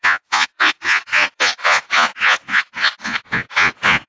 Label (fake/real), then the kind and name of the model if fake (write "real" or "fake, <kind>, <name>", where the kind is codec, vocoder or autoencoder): fake, vocoder, Vocos